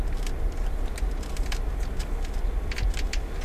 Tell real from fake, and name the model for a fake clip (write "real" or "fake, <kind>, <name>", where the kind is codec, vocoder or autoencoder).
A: real